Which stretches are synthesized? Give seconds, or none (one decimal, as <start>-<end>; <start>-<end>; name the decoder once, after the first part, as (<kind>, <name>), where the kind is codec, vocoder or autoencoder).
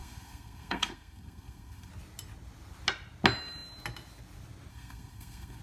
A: 0.0-1.9 (codec, SNAC); 4.7-5.6